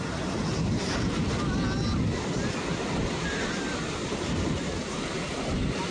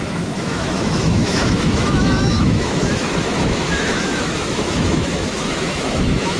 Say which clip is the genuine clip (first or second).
first